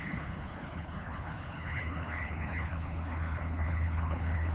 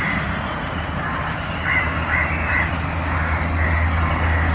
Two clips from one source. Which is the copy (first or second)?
first